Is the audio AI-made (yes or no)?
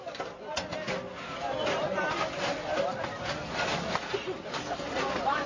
no